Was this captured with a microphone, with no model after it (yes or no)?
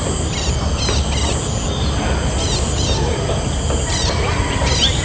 yes